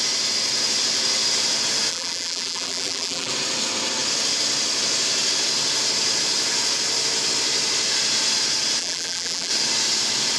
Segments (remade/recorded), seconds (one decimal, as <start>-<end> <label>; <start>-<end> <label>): 0.0-1.9 recorded; 1.9-3.3 remade; 3.3-8.8 recorded; 8.8-9.5 remade; 9.5-10.4 recorded